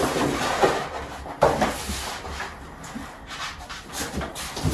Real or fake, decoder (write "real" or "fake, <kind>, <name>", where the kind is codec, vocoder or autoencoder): real